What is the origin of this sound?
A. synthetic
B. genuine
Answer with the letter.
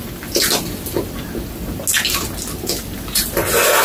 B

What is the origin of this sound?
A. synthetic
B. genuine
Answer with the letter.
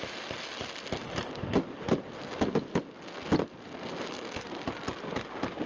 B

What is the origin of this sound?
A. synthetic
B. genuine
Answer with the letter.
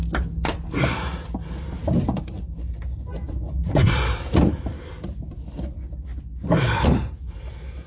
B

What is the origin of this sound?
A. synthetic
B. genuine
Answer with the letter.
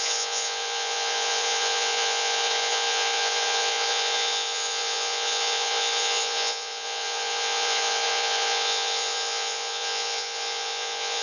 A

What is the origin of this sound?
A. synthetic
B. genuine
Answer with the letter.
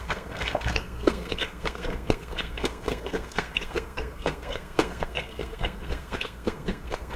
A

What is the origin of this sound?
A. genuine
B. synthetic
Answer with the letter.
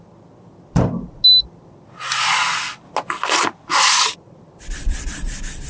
A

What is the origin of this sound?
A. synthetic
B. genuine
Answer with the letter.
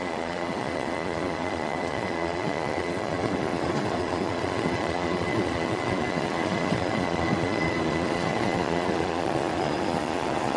A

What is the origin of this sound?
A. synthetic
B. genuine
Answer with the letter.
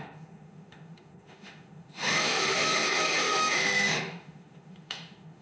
A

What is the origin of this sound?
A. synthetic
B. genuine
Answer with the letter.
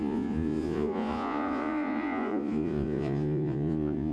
A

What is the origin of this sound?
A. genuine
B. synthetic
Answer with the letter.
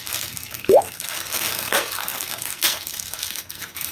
B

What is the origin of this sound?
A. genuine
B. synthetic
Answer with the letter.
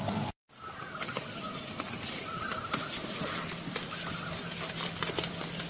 B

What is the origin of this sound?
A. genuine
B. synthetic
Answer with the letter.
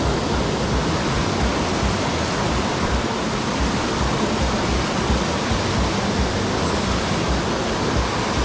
A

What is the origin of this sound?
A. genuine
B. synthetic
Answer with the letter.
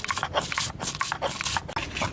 A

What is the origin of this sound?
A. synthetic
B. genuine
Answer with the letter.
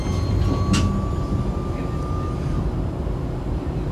B